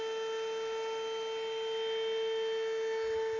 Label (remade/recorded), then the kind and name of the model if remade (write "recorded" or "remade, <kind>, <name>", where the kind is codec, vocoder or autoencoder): recorded